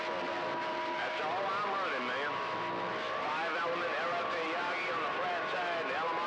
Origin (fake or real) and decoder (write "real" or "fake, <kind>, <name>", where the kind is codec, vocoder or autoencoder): real